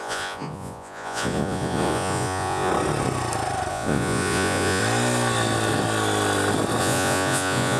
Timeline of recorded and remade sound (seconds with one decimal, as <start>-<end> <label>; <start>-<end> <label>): 0.0-2.7 remade; 2.7-3.7 recorded; 3.7-4.8 remade; 4.8-6.8 recorded; 6.8-7.8 remade